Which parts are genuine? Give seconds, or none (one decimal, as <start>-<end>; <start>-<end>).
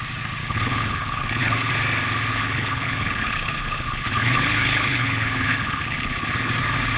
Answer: 0.0-0.4; 1.7-2.3; 6.5-7.0